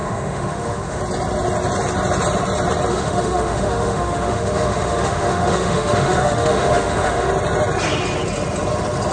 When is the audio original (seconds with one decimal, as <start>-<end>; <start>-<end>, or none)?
1.0-2.9; 7.3-9.1